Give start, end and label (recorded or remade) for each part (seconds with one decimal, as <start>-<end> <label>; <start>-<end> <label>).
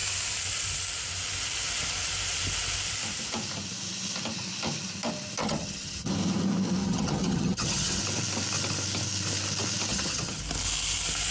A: 0.0-5.4 recorded; 5.4-6.1 remade; 6.1-6.8 recorded; 6.8-8.0 remade; 8.0-9.9 recorded; 9.9-10.4 remade; 10.4-11.3 recorded